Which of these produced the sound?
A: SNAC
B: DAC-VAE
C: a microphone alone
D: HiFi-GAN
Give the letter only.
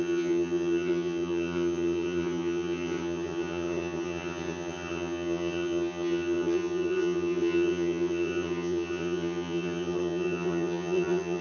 D